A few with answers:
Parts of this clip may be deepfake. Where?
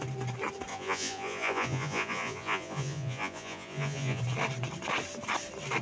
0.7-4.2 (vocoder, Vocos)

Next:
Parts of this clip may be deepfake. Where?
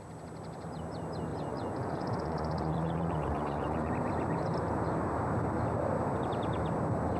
1.3-3.9 (vocoder, Vocos)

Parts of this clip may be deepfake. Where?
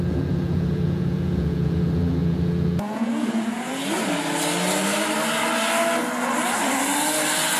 0.0-3.7 (vocoder, Vocos)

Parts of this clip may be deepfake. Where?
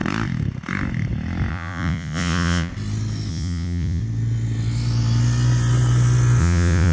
1.5-2.7 (vocoder, Vocos); 3.3-4.0; 6.4-6.9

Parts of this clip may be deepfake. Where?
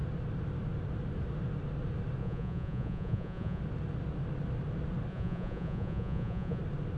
2.2-3.6 (vocoder, Vocos); 5.1-6.6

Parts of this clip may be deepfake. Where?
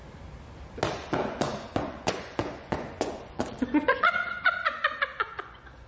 0.9-5.9 (vocoder, Vocos)